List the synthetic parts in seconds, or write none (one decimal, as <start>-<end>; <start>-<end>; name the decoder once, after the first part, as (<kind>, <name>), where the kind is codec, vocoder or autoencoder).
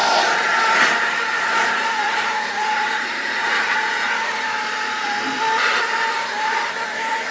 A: 1.3-5.1 (vocoder, Vocos)